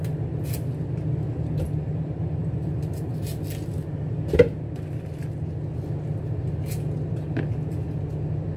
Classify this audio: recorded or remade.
recorded